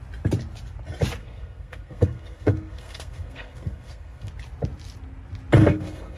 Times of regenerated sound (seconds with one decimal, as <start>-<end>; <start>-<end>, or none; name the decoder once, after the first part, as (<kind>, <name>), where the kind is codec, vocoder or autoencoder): 1.2-4.3 (codec, SNAC); 5.6-6.2